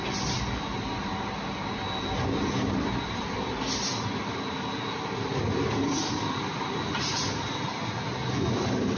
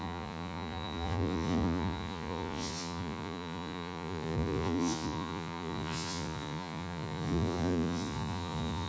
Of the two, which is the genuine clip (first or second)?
first